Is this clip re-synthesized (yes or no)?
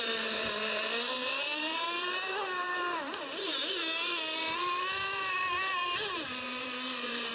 yes